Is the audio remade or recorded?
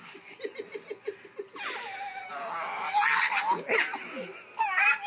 recorded